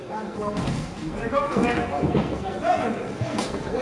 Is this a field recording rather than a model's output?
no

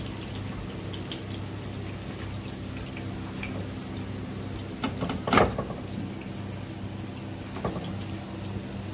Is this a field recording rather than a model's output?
yes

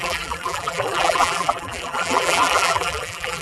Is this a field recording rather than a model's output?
no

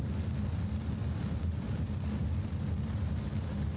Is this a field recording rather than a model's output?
yes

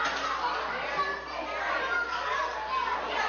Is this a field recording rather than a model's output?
yes